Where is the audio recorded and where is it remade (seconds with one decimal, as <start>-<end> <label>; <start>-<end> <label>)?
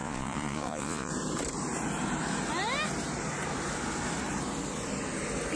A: 0.0-1.1 remade; 1.1-5.6 recorded